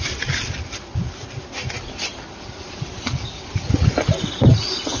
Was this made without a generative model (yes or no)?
yes